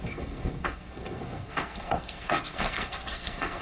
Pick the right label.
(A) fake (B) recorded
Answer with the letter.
A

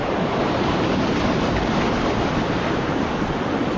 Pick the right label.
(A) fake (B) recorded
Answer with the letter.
B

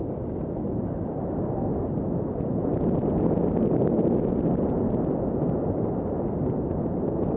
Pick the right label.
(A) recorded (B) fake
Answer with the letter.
A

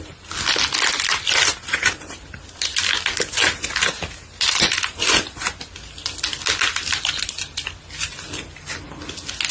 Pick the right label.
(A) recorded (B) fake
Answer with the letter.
A